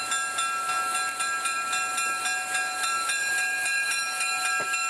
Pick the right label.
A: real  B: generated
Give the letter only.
A